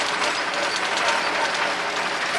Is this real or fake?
real